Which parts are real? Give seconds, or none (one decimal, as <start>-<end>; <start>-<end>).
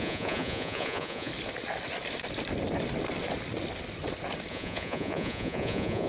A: 1.3-4.5